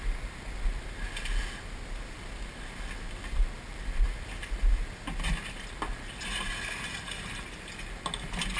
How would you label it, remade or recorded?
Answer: recorded